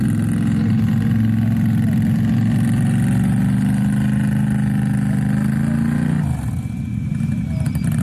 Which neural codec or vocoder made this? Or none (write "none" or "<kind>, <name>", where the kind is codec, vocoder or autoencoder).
none